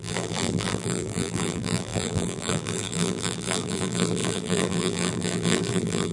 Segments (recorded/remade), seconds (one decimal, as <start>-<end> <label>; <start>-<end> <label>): 0.0-6.1 remade